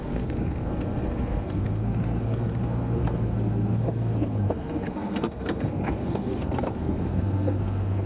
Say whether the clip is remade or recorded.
remade